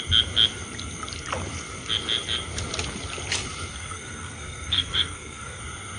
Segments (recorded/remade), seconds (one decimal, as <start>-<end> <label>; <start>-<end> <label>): 0.0-3.7 recorded; 3.7-5.6 remade; 5.6-6.0 recorded